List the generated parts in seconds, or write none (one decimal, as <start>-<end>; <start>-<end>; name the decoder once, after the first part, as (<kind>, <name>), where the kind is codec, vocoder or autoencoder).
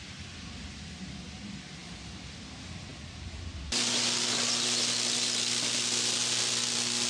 none